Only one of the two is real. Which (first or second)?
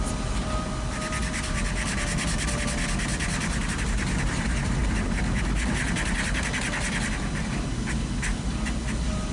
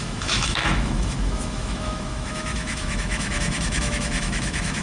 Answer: first